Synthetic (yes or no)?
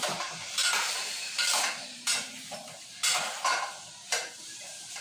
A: yes